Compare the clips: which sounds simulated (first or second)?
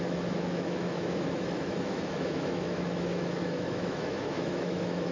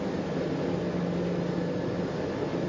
first